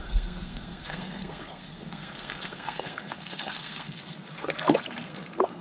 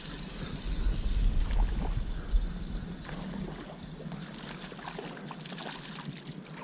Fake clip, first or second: first